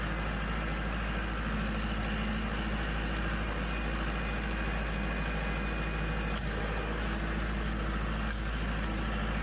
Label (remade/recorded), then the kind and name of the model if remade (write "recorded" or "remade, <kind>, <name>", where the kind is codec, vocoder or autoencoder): recorded